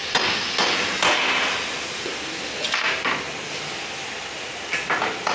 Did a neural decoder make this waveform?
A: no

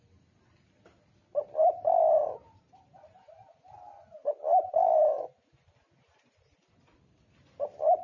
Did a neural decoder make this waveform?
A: no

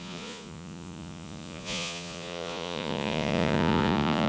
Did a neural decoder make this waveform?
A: yes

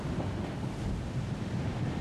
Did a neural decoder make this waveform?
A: no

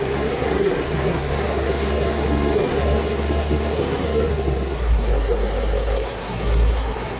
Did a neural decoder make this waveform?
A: yes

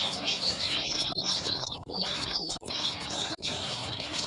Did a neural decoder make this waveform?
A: yes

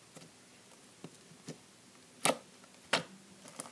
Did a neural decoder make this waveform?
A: no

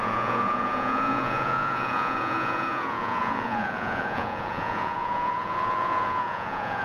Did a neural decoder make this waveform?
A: yes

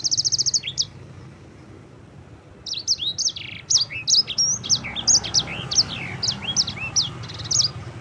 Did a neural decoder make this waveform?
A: no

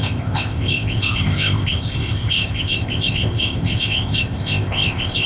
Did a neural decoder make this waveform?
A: yes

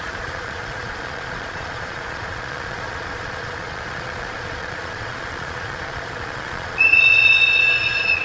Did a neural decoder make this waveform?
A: yes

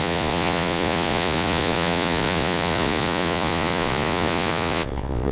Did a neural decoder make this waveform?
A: yes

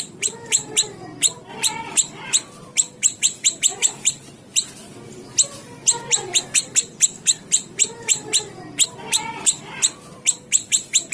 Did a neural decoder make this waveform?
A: no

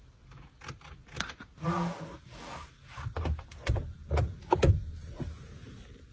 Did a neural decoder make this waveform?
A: no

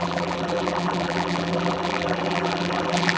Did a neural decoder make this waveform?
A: yes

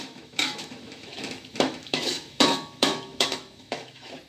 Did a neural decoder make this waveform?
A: yes